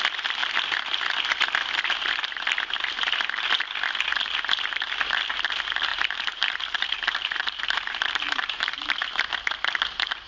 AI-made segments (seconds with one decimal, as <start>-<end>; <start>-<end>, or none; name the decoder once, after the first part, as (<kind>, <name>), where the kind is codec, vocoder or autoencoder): 5.9-8.7 (vocoder, BigVGAN v2)